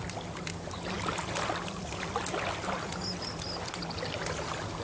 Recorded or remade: recorded